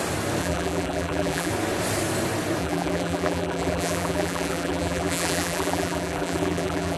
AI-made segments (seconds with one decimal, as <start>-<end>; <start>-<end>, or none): 0.4-1.5; 2.6-7.0